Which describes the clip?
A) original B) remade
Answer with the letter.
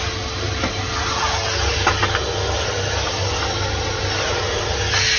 A